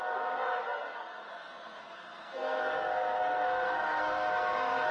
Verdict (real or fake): fake